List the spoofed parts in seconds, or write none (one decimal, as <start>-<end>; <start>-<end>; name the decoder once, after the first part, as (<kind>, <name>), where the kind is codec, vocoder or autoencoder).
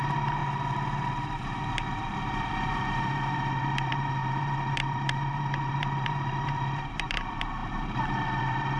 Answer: 0.0-0.4 (vocoder, BigVGAN v2); 1.1-8.8